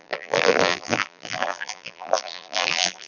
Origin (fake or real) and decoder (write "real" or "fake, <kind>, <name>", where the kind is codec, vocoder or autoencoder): fake, vocoder, BigVGAN v2